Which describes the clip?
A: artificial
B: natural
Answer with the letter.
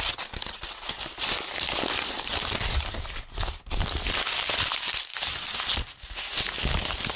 B